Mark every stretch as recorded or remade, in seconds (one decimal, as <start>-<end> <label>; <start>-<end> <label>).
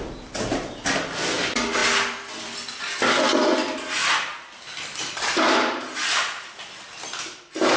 0.0-7.8 recorded